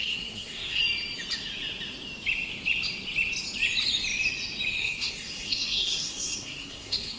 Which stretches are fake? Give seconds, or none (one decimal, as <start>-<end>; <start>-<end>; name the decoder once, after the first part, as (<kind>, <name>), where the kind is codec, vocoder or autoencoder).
0.0-0.8 (codec, SNAC); 4.8-7.2